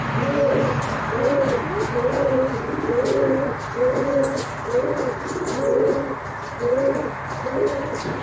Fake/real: real